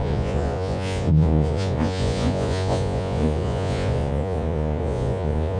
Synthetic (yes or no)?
yes